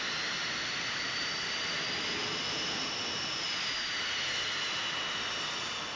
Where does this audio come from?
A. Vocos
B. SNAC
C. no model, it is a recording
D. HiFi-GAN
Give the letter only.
C